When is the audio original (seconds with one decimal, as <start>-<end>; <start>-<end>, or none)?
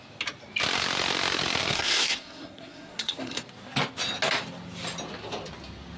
0.0-1.6; 3.4-6.0